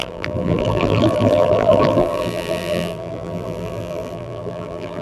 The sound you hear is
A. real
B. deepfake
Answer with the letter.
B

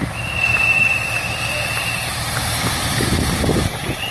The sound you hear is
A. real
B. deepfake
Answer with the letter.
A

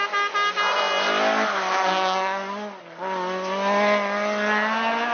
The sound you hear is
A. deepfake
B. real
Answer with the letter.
B